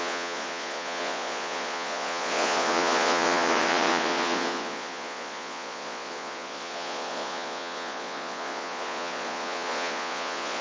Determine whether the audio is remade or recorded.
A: remade